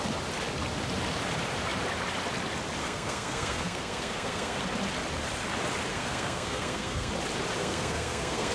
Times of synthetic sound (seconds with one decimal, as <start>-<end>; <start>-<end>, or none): 2.8-4.6; 5.9-7.1; 7.6-8.5